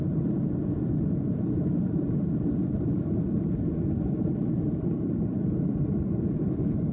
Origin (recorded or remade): remade